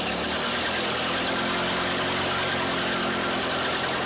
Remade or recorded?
recorded